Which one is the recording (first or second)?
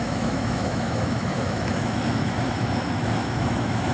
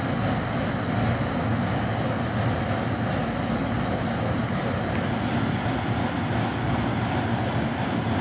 second